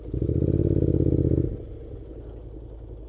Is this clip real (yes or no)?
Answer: yes